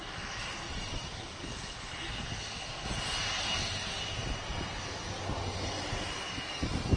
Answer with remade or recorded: recorded